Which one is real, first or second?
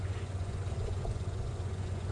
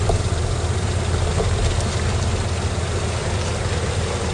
second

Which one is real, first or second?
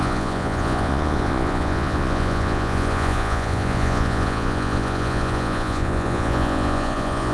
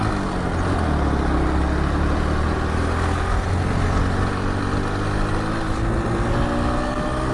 second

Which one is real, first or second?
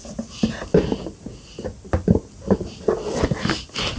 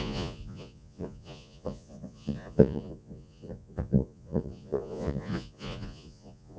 first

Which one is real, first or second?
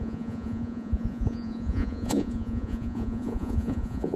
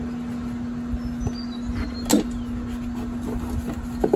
second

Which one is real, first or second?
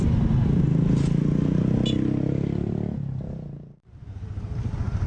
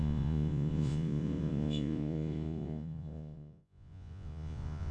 first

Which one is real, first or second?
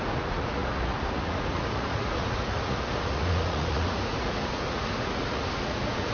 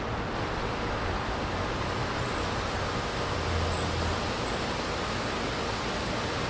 second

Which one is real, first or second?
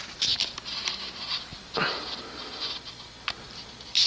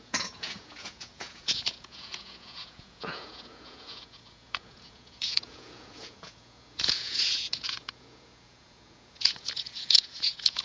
first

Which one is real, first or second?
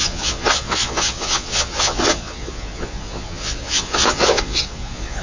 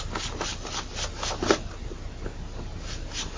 second